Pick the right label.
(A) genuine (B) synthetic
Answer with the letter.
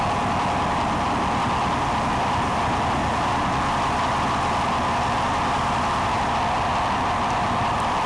A